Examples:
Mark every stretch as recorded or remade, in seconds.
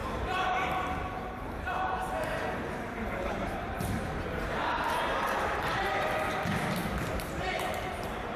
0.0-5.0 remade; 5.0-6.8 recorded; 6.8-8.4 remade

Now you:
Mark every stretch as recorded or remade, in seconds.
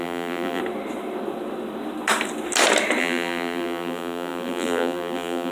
0.0-0.6 remade; 0.6-3.0 recorded; 3.0-5.5 remade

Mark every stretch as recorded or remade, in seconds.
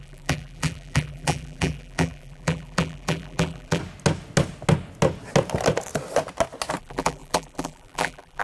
0.0-3.8 remade; 3.8-6.8 recorded; 6.8-8.4 remade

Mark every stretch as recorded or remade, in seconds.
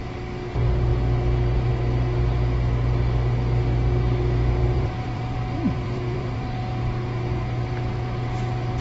0.0-4.6 recorded; 4.6-6.6 remade; 6.6-8.8 recorded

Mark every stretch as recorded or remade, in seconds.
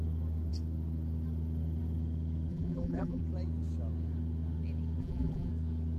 0.0-2.5 recorded; 2.5-3.2 remade; 3.2-5.0 recorded; 5.0-5.5 remade; 5.5-6.0 recorded